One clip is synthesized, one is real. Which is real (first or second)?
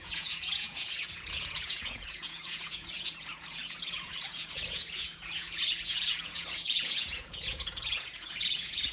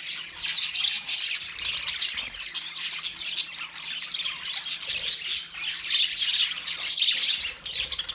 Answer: second